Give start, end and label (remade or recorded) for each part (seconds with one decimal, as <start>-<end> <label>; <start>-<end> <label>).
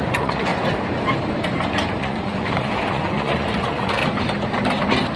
0.0-0.5 remade; 0.5-2.0 recorded; 2.0-4.0 remade; 4.0-5.2 recorded